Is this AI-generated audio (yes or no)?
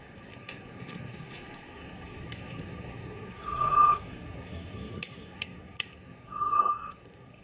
yes